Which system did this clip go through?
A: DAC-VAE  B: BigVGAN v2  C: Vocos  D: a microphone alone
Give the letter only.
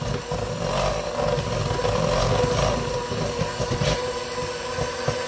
D